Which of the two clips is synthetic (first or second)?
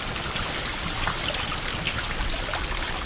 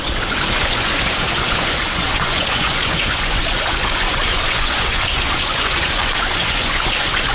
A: second